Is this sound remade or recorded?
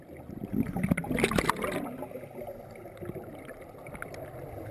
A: recorded